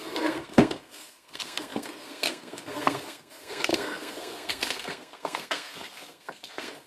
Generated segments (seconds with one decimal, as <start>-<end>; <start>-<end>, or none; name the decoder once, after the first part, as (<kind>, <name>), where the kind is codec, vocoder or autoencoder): 0.0-6.9 (codec, SNAC)